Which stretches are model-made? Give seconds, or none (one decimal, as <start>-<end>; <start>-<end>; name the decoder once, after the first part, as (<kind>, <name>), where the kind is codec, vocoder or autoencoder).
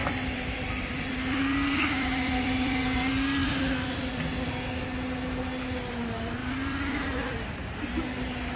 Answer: 0.0-2.8 (vocoder, BigVGAN v2); 3.4-4.3; 6.4-7.8